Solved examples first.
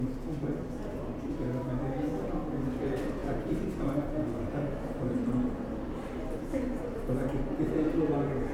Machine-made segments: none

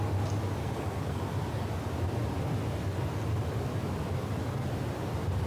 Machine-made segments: 0.6-1.2 (codec, SNAC)

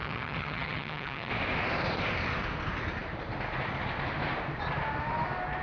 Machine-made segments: 0.0-1.3 (vocoder, HiFi-GAN)

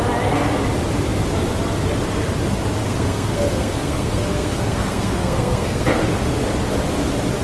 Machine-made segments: 2.8-6.0 (codec, SNAC)

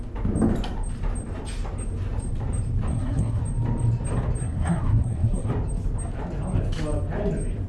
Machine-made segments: 2.9-3.4 (codec, SNAC); 4.4-5.5